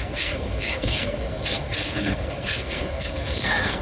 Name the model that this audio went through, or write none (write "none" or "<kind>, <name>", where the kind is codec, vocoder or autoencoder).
codec, SNAC